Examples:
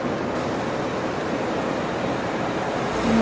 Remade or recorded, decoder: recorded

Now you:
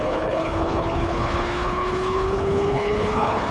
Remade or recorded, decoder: remade, codec, HILCodec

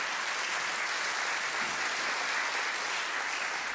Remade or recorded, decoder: recorded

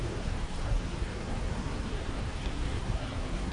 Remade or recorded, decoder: remade, codec, SNAC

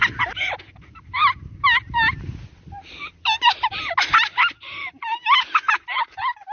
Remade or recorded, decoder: recorded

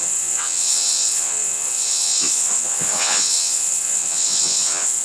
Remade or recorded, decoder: remade, vocoder, WaveNeXt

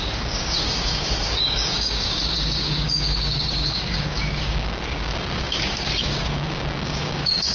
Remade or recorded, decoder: remade, codec, DAC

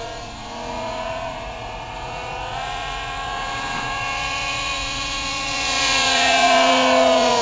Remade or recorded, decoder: remade, vocoder, Vocos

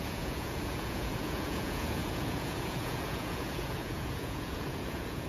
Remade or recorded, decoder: remade, vocoder, Vocos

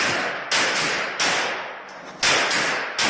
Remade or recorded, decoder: recorded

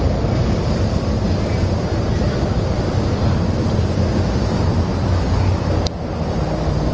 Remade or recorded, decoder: recorded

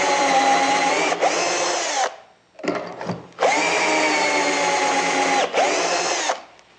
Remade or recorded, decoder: recorded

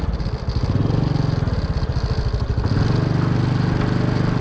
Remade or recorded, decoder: recorded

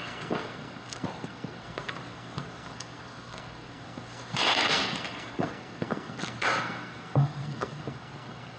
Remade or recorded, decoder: remade, codec, SNAC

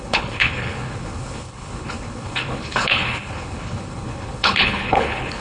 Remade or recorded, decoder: remade, codec, HILCodec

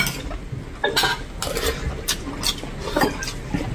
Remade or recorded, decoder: recorded